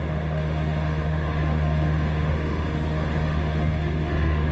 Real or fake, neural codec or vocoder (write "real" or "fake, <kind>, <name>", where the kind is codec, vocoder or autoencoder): fake, autoencoder, DAC-VAE